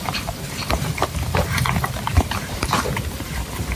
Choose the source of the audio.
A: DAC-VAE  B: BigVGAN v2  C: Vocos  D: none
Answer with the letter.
B